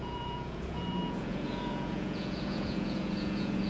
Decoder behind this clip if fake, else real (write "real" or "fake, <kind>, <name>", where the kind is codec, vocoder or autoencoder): fake, vocoder, Vocos